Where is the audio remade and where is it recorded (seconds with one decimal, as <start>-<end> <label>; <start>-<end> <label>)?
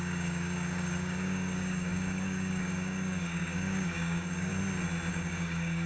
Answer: 0.0-4.5 remade; 4.5-5.1 recorded; 5.1-5.9 remade